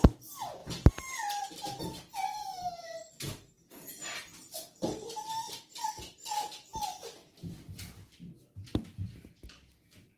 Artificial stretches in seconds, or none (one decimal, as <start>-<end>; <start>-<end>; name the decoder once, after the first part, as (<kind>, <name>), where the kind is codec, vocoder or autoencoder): none

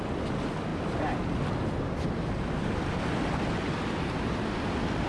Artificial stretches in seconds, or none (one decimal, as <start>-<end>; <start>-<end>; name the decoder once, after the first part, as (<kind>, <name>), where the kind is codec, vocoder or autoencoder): none

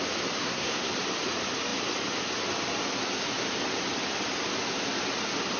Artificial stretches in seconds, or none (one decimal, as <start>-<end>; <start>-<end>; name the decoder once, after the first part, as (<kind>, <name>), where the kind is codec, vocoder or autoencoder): 0.4-0.9 (codec, SNAC)

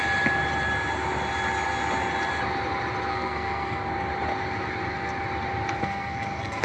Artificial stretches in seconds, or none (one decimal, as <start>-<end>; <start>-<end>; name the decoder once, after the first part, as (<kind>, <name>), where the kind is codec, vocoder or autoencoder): 3.1-3.9 (codec, SNAC); 5.8-6.6

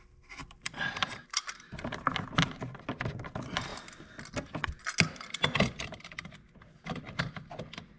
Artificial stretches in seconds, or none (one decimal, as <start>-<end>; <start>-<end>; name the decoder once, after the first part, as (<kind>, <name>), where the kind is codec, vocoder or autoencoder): none

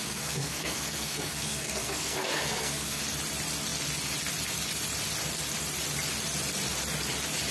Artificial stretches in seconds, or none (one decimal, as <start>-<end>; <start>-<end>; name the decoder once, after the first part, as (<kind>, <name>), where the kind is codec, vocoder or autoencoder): 0.0-3.0 (codec, SNAC)

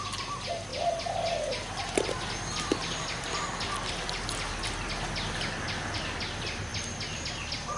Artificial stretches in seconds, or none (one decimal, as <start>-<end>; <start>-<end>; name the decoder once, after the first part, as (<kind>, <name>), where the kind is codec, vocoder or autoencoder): none